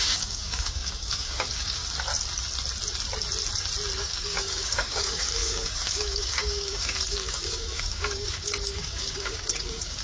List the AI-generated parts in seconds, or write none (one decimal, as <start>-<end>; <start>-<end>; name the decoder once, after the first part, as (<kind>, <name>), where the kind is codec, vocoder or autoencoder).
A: 0.0-1.8 (codec, DAC); 4.0-10.0